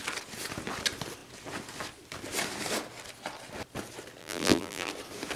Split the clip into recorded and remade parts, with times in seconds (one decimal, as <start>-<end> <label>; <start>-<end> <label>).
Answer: 0.0-4.2 recorded; 4.2-4.9 remade; 4.9-5.4 recorded